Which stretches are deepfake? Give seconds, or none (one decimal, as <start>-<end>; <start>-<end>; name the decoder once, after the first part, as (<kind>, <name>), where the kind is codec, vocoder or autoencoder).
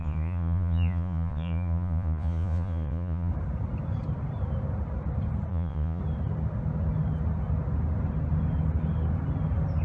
0.0-3.3 (vocoder, Vocos); 5.5-6.0